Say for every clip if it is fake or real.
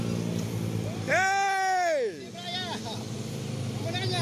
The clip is real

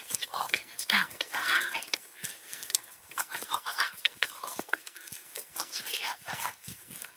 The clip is fake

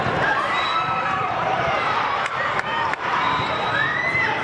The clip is fake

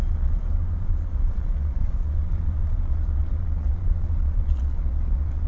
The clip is fake